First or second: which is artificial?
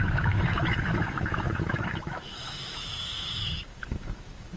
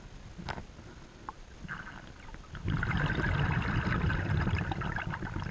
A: first